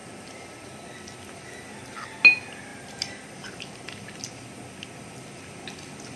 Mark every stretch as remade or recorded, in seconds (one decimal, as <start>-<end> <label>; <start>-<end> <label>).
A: 0.0-0.7 remade; 0.7-2.7 recorded; 2.7-4.2 remade; 4.2-6.2 recorded